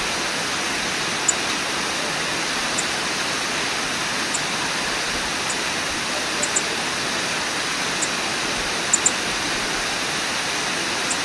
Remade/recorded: recorded